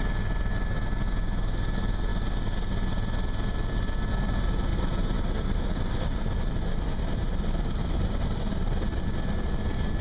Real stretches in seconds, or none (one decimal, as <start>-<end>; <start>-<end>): 0.0-4.7; 9.0-10.0

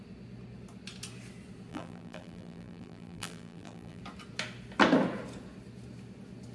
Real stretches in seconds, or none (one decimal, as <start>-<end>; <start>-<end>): 0.0-1.7; 4.0-6.5

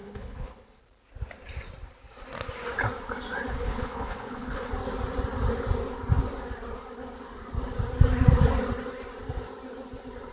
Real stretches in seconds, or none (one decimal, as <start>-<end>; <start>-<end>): 0.8-3.5; 4.7-10.3